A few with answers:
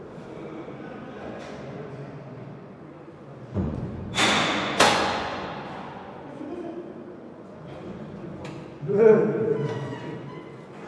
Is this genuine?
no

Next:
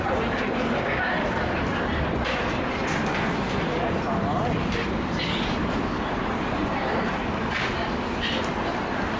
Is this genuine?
yes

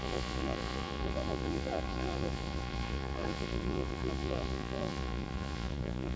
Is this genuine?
no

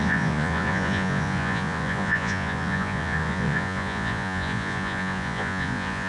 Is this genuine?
no